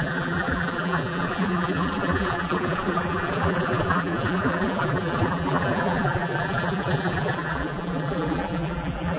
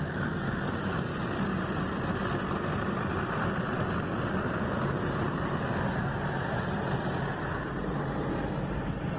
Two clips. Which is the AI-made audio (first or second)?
first